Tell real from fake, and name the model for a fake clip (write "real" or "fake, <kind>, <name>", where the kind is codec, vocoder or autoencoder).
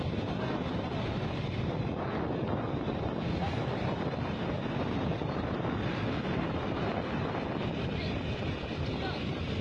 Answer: fake, vocoder, BigVGAN v2